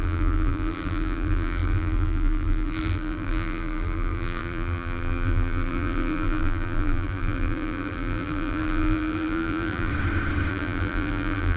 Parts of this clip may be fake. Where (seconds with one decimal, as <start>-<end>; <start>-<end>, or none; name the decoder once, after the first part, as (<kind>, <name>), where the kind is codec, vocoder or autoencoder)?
0.0-9.9 (vocoder, BigVGAN v2); 10.5-11.6